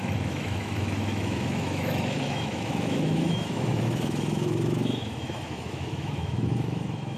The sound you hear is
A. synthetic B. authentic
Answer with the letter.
A